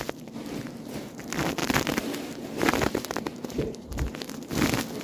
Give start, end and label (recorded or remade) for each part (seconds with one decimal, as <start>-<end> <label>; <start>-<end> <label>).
0.0-1.6 recorded; 1.6-4.5 remade; 4.5-5.0 recorded

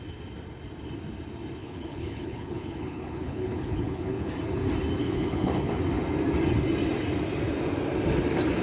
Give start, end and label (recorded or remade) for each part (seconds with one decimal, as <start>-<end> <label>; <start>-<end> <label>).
0.0-1.6 recorded; 1.6-4.3 remade; 4.3-5.0 recorded; 5.0-5.7 remade; 5.7-8.6 recorded

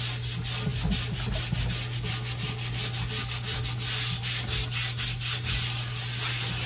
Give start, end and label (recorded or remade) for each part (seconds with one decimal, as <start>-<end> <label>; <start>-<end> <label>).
0.0-6.7 recorded

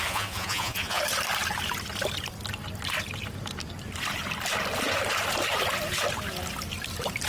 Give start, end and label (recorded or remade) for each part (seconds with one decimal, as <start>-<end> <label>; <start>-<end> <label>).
0.0-1.0 remade; 1.0-7.3 recorded

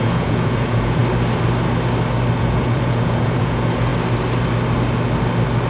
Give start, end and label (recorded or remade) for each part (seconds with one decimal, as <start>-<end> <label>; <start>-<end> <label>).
0.0-1.0 remade; 1.0-2.4 recorded; 2.4-3.9 remade; 3.9-5.7 recorded

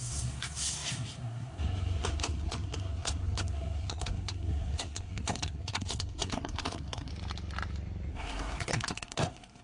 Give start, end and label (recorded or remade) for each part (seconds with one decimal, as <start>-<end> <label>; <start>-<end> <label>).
0.0-7.1 remade; 7.1-8.1 recorded; 8.1-9.6 remade

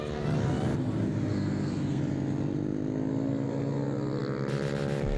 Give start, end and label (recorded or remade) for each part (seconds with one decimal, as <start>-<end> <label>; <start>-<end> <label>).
0.0-1.2 recorded; 1.2-2.0 remade; 2.0-5.2 recorded

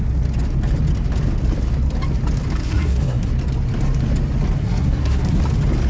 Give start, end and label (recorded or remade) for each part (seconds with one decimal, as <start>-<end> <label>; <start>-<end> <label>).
0.0-2.6 recorded; 2.6-3.3 remade; 3.3-4.6 recorded; 4.6-5.4 remade; 5.4-5.9 recorded